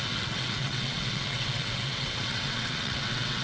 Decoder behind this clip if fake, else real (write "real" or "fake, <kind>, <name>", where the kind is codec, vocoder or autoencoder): fake, vocoder, WaveNeXt